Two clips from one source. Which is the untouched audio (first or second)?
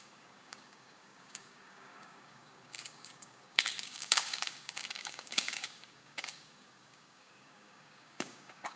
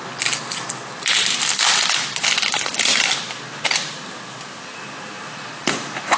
second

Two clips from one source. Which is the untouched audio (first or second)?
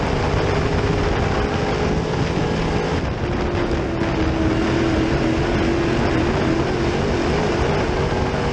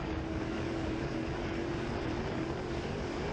first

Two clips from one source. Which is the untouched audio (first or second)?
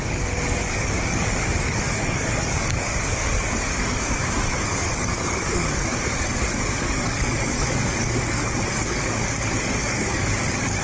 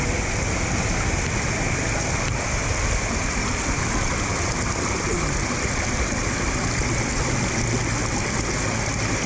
second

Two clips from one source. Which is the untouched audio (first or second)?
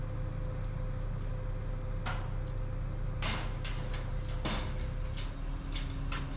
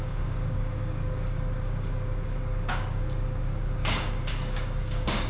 first